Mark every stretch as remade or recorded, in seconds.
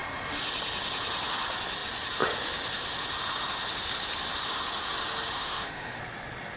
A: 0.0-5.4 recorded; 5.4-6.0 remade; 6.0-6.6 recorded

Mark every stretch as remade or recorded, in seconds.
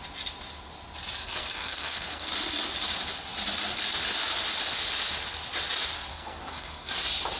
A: 0.0-1.2 recorded; 1.2-2.3 remade; 2.3-6.1 recorded; 6.1-6.9 remade; 6.9-7.4 recorded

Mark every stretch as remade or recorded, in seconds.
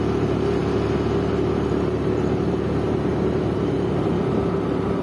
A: 0.0-5.0 recorded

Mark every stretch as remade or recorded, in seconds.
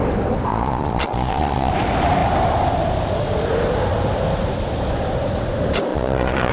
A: 0.0-0.5 recorded; 0.5-1.7 remade; 1.7-5.9 recorded; 5.9-6.5 remade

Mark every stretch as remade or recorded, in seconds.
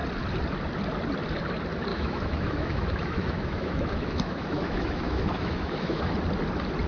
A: 0.0-1.9 recorded; 1.9-6.0 remade; 6.0-6.9 recorded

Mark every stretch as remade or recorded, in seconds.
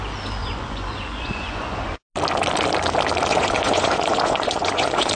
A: 0.0-0.4 recorded; 0.4-2.0 remade; 2.0-3.3 recorded; 3.3-5.2 remade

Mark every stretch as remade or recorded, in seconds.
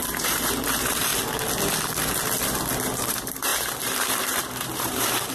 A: 0.0-1.1 remade; 1.1-3.1 recorded; 3.1-5.3 remade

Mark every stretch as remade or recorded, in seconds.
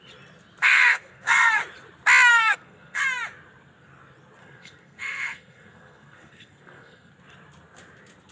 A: 0.0-0.6 recorded; 0.6-1.6 remade; 1.6-2.3 recorded; 2.3-3.0 remade; 3.0-4.4 recorded; 4.4-7.1 remade; 7.1-8.3 recorded